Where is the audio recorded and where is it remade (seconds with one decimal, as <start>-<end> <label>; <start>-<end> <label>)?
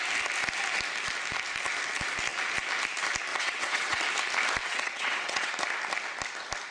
0.0-3.3 recorded; 3.3-4.0 remade; 4.0-4.6 recorded; 4.6-5.5 remade; 5.5-6.7 recorded